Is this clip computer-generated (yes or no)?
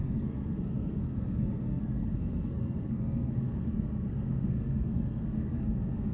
yes